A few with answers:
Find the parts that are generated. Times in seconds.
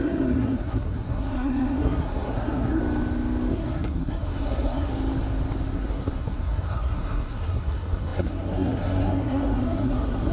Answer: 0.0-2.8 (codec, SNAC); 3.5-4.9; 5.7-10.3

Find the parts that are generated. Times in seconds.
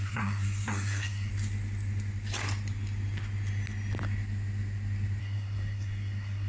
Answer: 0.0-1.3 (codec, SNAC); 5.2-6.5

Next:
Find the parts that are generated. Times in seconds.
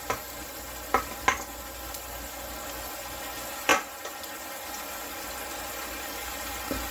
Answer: none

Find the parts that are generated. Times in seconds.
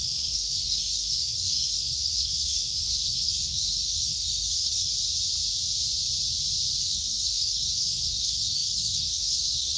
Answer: 0.0-4.9 (codec, SNAC); 6.8-9.8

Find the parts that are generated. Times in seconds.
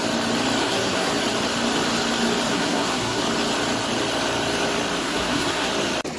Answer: 0.6-1.1 (codec, SNAC); 2.5-3.2; 5.0-5.7